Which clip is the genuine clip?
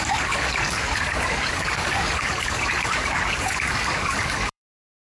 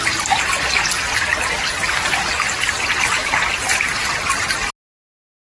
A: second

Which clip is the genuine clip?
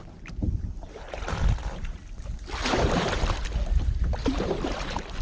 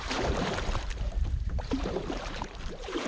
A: first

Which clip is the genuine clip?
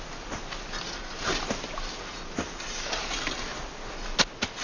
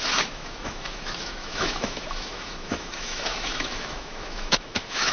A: first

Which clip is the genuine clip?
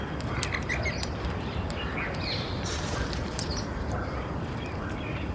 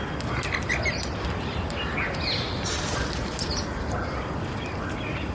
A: second